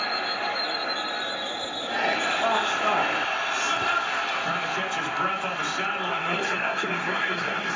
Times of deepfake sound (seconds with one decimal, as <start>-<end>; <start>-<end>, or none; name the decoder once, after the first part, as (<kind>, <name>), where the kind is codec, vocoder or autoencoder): 6.1-7.8 (codec, SNAC)